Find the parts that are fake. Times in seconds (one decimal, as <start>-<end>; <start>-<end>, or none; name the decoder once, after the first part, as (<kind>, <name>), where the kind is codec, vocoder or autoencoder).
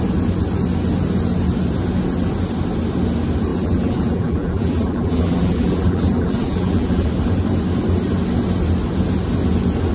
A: 3.5-7.1 (vocoder, BigVGAN v2)